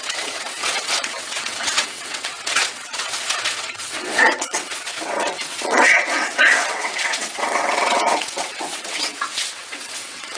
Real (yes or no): no